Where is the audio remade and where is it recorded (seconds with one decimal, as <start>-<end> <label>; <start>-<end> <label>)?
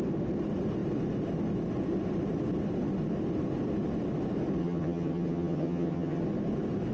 0.0-4.6 recorded; 4.6-6.2 remade; 6.2-6.9 recorded